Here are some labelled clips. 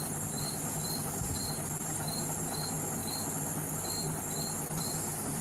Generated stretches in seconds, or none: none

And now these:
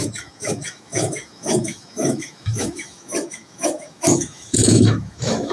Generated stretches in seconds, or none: 0.0-5.5